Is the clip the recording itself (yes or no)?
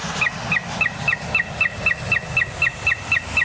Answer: yes